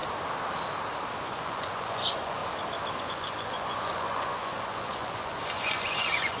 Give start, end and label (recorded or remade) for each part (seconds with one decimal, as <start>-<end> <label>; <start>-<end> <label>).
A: 0.0-1.2 recorded; 1.2-2.4 remade; 2.4-3.0 recorded; 3.0-6.4 remade